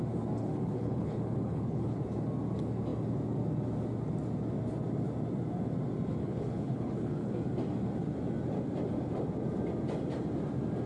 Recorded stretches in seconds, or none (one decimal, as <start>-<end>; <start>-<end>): 0.0-0.4; 2.0-6.2; 7.3-10.9